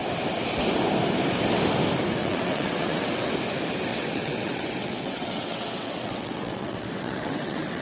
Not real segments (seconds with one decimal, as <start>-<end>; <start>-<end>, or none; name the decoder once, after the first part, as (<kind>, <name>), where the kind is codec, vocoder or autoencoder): 2.2-3.3 (vocoder, WaveNeXt); 3.9-7.8